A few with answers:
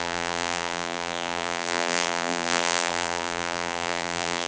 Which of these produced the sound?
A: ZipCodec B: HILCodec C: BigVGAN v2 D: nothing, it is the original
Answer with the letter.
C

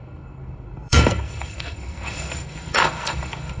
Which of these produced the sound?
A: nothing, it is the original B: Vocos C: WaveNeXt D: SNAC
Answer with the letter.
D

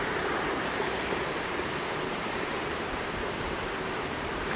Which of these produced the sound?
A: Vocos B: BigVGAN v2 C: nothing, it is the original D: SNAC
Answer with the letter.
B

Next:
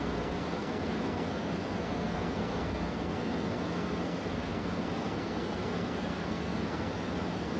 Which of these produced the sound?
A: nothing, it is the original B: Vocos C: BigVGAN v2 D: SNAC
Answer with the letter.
D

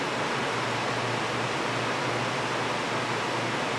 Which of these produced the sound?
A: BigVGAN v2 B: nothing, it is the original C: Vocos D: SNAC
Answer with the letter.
B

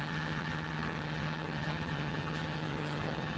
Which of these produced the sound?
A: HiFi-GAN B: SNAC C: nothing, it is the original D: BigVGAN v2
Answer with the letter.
A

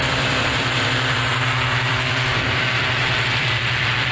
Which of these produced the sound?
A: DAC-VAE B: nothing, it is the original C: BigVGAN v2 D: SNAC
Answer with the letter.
C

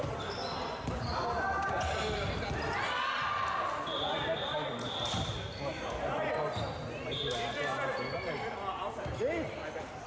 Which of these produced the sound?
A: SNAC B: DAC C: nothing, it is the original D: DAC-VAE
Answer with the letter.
C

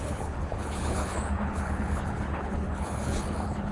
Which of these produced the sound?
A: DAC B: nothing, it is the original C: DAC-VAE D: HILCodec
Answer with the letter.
D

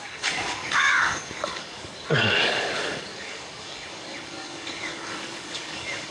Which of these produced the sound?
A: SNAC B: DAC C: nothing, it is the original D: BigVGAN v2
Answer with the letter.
B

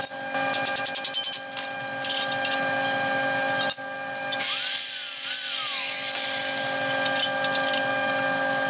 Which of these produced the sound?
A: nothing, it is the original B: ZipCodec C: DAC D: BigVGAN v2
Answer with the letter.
A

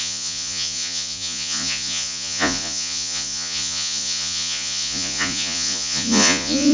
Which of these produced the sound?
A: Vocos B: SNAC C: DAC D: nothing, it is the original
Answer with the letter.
A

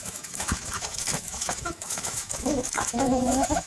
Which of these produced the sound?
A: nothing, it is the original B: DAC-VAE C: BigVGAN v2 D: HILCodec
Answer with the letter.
B